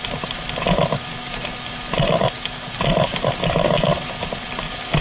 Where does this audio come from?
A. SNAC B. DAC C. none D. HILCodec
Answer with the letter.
C